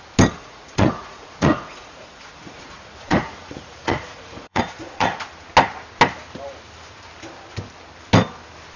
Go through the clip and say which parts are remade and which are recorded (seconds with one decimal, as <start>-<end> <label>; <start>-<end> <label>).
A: 0.0-0.4 recorded; 0.4-5.2 remade; 5.2-8.8 recorded